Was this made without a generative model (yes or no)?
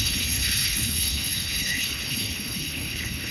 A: no